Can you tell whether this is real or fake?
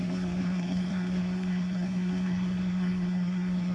fake